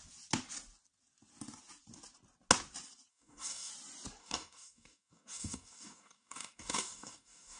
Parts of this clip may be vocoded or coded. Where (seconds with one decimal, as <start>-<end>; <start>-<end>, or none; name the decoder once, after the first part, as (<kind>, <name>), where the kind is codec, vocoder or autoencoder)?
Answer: 3.1-3.7 (codec, DAC); 4.2-7.6